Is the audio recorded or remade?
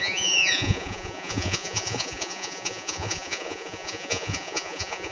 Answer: remade